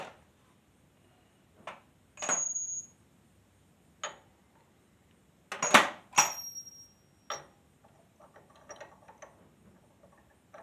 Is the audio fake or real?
real